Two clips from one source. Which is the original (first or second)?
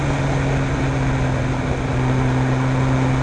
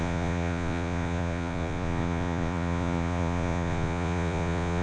first